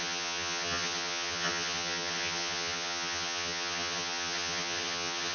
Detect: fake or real fake